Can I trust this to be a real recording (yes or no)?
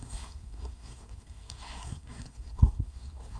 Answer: no